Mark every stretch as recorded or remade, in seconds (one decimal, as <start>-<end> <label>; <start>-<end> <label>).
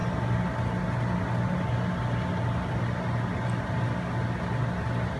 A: 0.0-5.2 recorded